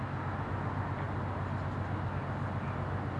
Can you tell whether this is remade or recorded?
recorded